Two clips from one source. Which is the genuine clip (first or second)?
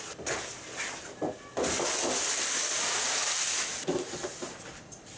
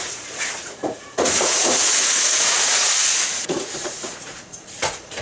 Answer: first